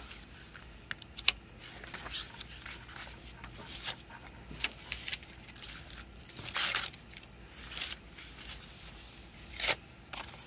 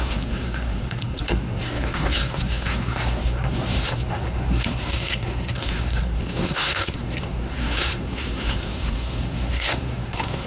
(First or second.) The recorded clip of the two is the first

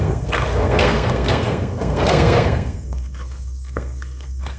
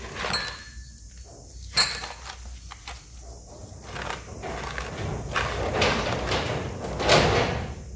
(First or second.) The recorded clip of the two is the second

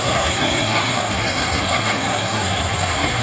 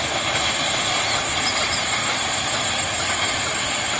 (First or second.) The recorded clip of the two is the second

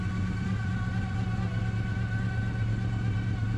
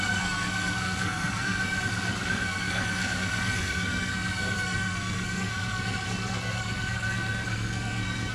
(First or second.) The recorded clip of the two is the first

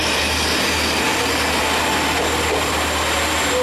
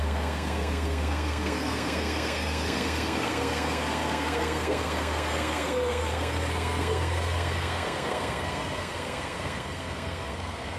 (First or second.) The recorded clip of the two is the first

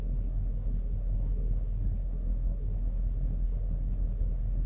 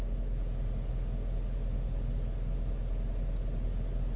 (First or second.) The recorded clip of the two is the second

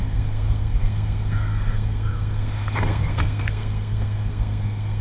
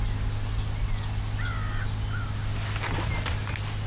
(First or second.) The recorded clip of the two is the second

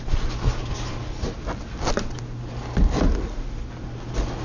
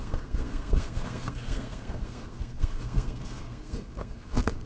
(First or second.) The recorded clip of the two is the first